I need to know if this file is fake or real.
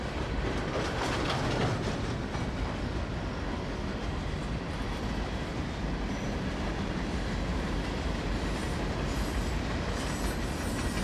real